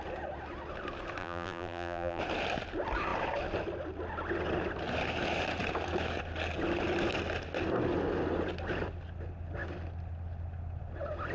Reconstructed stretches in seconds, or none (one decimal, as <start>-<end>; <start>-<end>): 1.2-2.2